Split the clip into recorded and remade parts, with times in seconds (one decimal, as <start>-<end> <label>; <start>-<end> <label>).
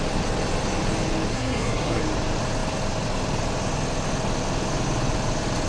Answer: 0.0-1.3 recorded; 1.3-2.0 remade; 2.0-5.7 recorded